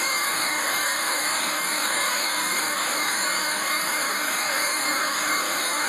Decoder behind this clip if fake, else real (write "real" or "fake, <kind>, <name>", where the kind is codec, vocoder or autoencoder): fake, codec, DAC